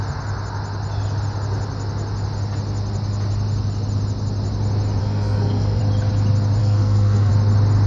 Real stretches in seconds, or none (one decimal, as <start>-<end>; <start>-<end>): 0.0-5.0; 5.8-6.6; 7.3-7.9